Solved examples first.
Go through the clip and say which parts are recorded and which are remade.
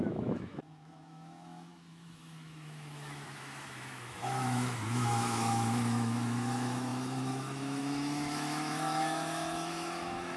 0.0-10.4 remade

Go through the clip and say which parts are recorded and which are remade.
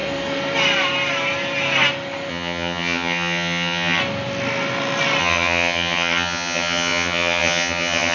0.0-2.3 recorded; 2.3-4.0 remade; 4.0-5.2 recorded; 5.2-8.1 remade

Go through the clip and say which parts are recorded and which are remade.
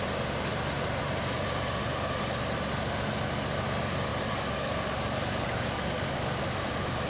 0.0-4.1 recorded; 4.1-6.4 remade; 6.4-7.1 recorded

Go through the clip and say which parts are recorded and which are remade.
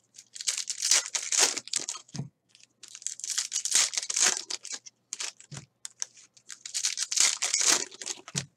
0.0-2.0 recorded; 2.0-2.5 remade; 2.5-8.6 recorded